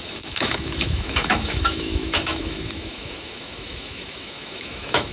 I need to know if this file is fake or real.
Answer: fake